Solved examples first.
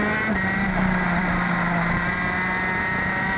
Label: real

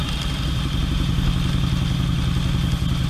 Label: real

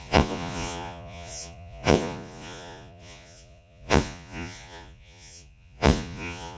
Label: fake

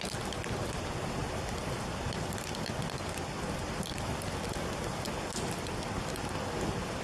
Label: real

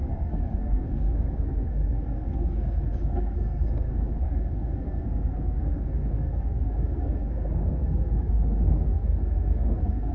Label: fake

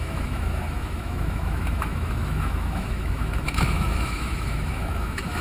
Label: fake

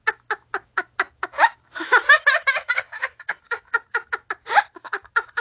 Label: fake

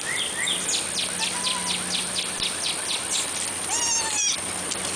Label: real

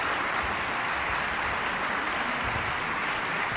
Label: real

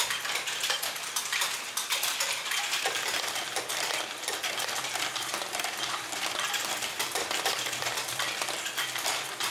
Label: fake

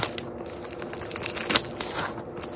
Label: real